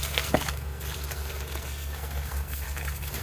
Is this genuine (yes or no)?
no